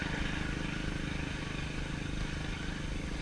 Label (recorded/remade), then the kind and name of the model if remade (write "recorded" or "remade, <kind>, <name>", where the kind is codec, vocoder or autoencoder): recorded